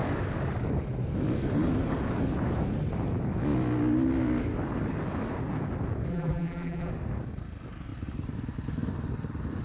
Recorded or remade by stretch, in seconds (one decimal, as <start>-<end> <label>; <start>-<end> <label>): 0.0-6.1 recorded; 6.1-6.9 remade; 6.9-9.6 recorded